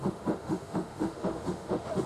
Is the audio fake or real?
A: fake